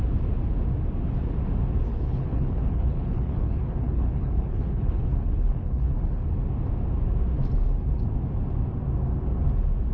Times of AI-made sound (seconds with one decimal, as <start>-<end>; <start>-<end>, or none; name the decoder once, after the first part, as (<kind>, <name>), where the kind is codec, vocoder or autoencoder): 1.9-6.3 (codec, HILCodec)